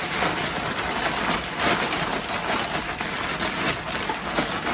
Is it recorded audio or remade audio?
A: recorded